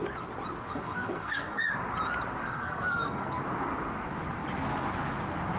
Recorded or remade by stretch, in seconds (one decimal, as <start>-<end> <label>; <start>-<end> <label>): 0.0-0.7 recorded; 0.7-1.6 remade; 1.6-2.4 recorded; 2.4-3.4 remade; 3.4-5.6 recorded